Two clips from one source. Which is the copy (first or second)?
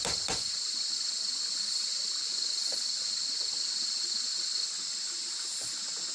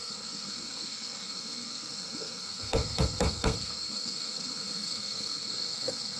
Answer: second